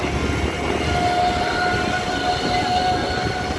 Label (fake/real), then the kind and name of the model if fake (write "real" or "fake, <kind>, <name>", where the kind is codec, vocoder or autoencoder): real